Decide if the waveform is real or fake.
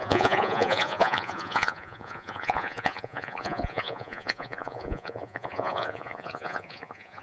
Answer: fake